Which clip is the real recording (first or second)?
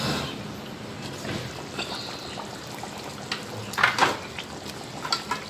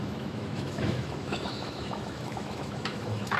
first